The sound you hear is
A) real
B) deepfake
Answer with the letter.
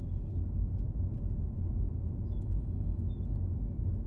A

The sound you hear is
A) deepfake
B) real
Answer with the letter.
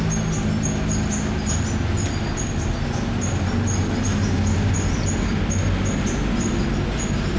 B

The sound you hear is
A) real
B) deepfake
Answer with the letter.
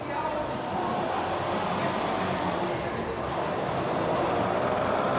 A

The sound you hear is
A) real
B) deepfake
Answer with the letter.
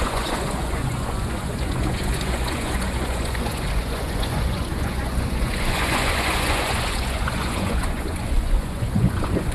B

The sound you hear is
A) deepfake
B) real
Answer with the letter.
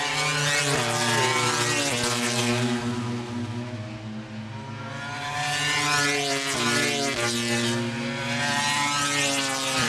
B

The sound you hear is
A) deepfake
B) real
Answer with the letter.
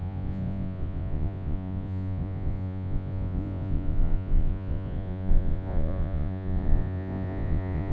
A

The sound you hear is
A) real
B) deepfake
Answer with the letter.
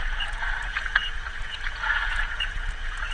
B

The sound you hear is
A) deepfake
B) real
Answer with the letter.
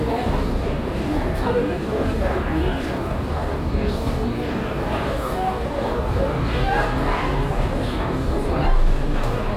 A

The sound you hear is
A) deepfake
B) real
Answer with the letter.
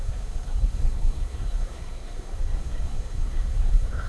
A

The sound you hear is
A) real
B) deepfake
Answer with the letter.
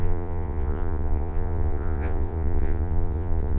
B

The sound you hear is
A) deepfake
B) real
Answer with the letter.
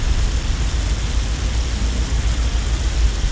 B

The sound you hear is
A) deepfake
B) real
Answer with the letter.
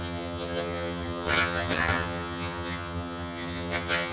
A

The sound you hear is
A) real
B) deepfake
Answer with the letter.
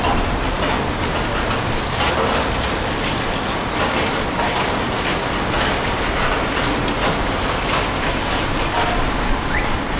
A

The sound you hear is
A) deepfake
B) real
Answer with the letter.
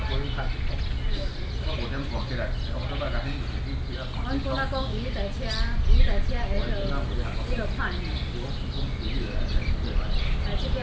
B